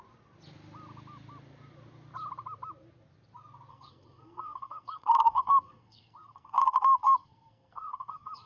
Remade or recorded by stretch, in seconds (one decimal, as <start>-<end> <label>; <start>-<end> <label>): 0.0-3.7 recorded; 3.7-8.5 remade